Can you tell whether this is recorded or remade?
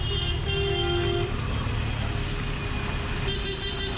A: recorded